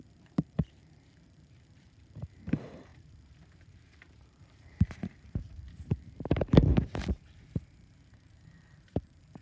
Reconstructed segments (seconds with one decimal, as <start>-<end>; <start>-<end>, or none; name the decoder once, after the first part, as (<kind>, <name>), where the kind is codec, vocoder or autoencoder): 0.0-9.4 (vocoder, BigVGAN v2)